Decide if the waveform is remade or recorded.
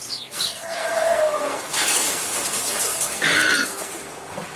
remade